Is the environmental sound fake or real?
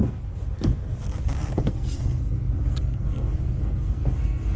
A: fake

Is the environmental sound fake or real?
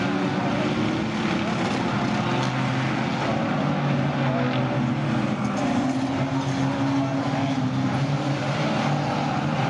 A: real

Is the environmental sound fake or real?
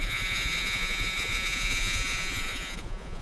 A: fake